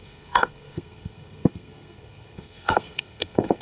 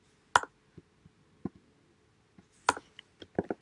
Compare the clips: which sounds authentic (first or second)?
second